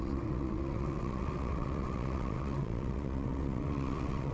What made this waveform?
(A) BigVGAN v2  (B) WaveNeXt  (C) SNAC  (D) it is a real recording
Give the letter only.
B